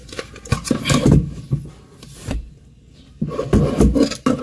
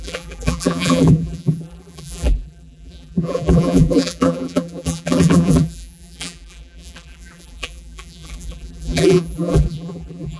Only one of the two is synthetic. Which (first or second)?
second